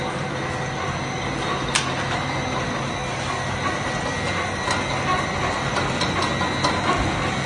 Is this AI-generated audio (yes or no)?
no